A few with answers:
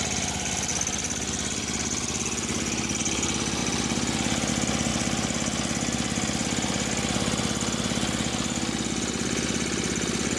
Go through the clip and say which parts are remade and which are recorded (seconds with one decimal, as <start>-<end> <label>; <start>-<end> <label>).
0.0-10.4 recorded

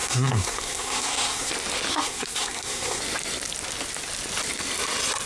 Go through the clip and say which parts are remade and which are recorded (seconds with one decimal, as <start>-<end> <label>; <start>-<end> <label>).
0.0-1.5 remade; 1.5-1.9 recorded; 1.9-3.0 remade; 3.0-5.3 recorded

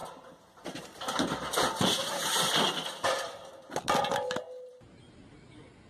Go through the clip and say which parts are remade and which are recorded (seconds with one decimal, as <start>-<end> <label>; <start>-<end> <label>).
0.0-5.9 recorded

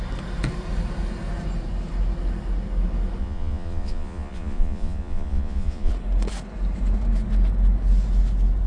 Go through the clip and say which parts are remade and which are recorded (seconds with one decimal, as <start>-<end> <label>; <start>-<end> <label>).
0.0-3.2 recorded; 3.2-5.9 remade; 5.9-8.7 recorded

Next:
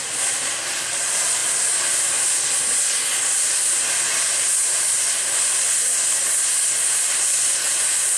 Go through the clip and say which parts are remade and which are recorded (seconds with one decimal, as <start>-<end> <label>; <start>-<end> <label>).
0.0-8.2 recorded

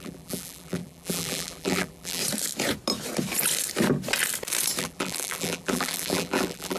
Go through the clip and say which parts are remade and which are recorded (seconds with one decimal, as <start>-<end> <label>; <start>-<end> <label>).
0.0-2.2 remade; 2.2-4.8 recorded; 4.8-6.8 remade

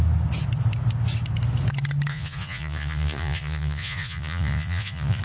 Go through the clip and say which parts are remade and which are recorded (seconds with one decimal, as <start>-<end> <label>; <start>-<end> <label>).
0.0-2.1 recorded; 2.1-5.2 remade

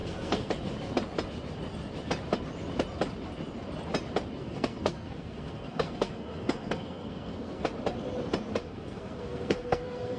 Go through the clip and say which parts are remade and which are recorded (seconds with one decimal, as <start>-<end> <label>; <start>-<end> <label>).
0.0-0.5 remade; 0.5-4.4 recorded; 4.4-7.7 remade; 7.7-8.6 recorded; 8.6-10.2 remade